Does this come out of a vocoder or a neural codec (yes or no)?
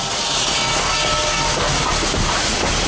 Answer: no